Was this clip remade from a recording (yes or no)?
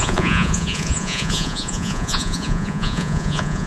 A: yes